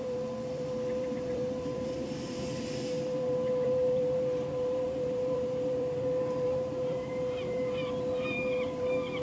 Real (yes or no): no